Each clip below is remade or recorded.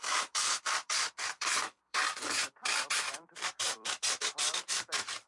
remade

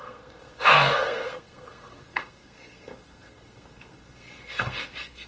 remade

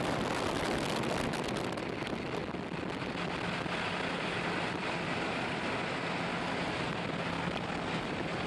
recorded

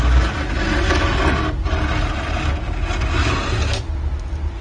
recorded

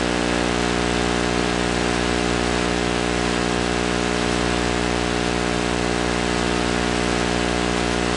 recorded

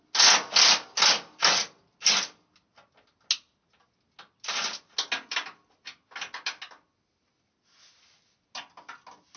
recorded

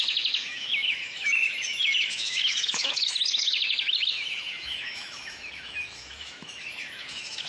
remade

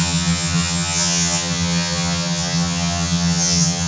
remade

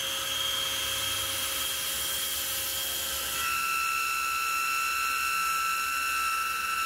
recorded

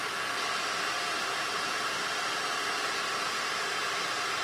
recorded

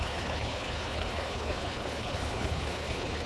remade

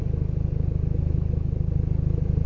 recorded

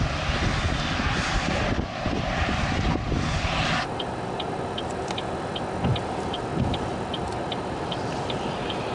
remade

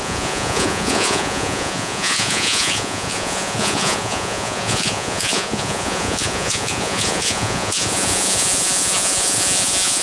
remade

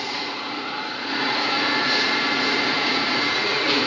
remade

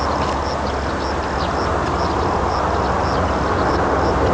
recorded